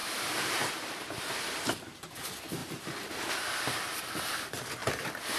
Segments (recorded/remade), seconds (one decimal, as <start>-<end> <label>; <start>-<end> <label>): 0.0-1.3 remade; 1.3-2.6 recorded; 2.6-3.3 remade; 3.3-5.4 recorded